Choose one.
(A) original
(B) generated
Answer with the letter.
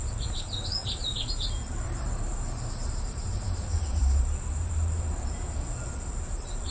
B